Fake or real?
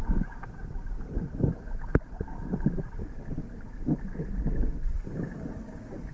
real